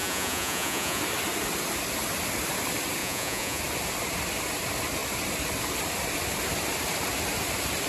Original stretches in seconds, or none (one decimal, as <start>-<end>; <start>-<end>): 1.0-3.0; 3.6-7.9